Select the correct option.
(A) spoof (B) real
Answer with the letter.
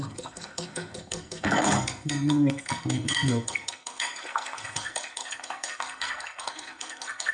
A